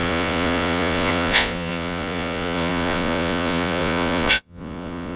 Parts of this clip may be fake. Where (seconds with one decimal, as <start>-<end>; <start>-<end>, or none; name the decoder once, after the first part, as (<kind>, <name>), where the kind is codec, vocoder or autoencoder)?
0.0-5.2 (vocoder, Vocos)